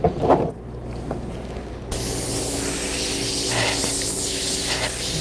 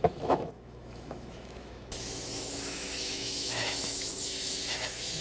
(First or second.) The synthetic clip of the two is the second